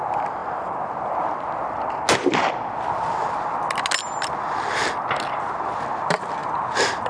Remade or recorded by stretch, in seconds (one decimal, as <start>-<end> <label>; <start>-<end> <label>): 0.0-7.1 recorded